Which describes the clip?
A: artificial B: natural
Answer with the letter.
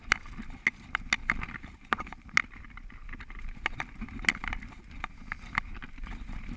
B